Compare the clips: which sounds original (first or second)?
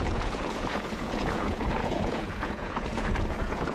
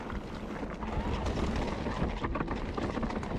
second